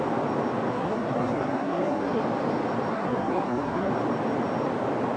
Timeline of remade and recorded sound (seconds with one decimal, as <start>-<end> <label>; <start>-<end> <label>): 0.0-0.7 recorded; 0.7-2.2 remade; 2.2-2.9 recorded; 2.9-3.9 remade; 3.9-5.2 recorded